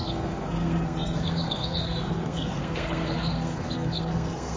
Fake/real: fake